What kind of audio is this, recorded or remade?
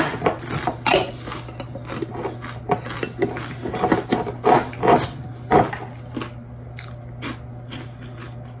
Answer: recorded